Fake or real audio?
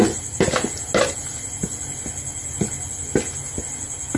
real